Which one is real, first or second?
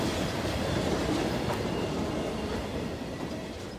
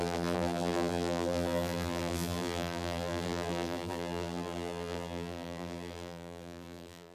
first